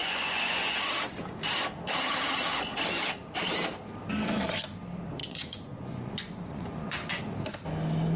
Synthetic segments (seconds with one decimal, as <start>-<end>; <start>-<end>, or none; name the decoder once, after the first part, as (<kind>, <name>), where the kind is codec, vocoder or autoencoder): 0.0-0.9 (vocoder, Vocos); 5.2-7.2